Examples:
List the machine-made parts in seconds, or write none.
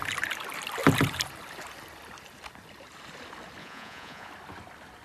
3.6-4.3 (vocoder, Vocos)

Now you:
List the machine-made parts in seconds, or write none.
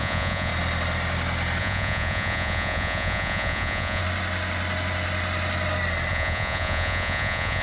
0.0-0.5 (vocoder, Vocos); 1.6-4.0; 6.1-7.6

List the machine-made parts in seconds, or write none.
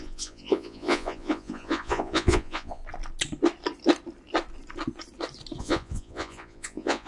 0.0-2.8 (vocoder, Vocos); 5.6-7.1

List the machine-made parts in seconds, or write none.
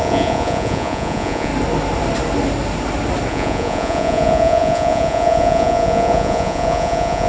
0.0-1.5 (vocoder, Vocos); 3.3-7.3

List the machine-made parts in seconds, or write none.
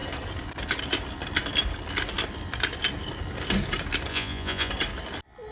4.1-4.7 (vocoder, Vocos)